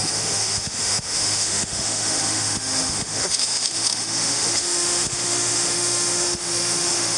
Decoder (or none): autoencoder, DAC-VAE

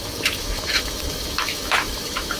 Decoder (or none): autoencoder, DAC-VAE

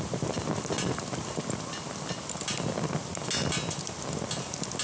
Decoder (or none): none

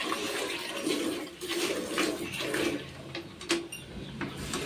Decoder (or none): none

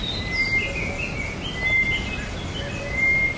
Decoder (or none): none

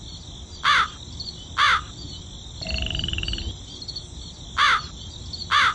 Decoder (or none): none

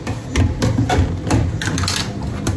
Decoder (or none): none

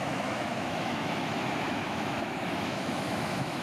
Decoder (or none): autoencoder, DAC-VAE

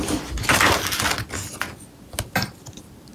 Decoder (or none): none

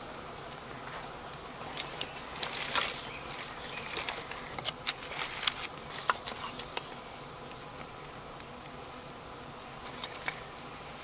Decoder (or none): none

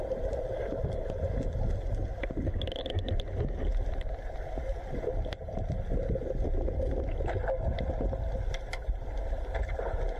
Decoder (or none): none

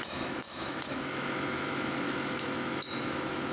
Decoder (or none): autoencoder, DAC-VAE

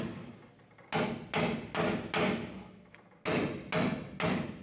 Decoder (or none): none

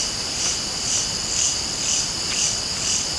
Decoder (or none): none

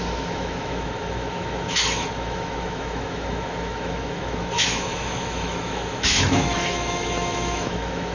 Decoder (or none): autoencoder, DAC-VAE